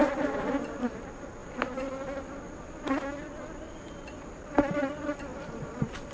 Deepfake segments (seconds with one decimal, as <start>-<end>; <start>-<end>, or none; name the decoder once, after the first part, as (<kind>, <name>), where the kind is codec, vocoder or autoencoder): 0.0-1.4 (vocoder, BigVGAN v2); 4.5-6.1